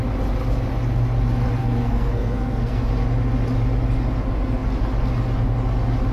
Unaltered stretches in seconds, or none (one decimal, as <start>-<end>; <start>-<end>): 0.0-1.6; 2.9-6.1